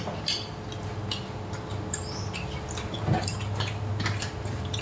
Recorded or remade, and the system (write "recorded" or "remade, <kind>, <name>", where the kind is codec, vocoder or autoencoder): recorded